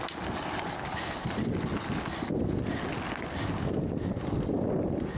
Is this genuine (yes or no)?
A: yes